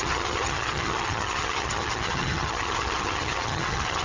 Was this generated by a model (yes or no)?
yes